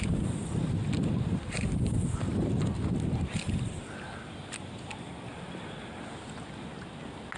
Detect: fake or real real